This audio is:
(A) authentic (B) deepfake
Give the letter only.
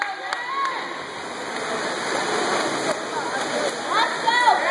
A